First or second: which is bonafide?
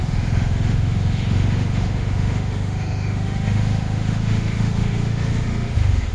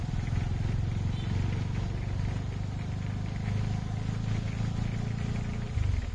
second